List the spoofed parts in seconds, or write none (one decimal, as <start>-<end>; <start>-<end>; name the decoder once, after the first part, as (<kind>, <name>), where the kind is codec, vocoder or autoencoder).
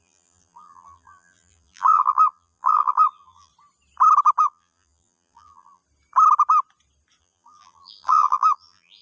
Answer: 0.0-3.5 (vocoder, BigVGAN v2); 4.4-5.8; 7.2-9.0